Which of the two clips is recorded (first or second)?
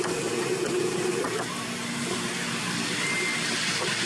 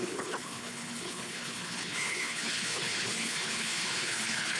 first